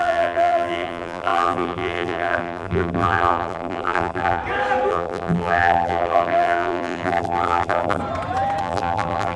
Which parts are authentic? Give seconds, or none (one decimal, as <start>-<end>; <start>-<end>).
4.4-4.9; 8.0-8.6